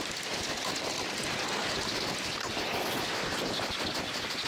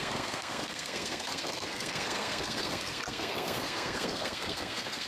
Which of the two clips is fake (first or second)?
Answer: second